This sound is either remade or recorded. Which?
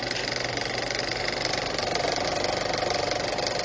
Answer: recorded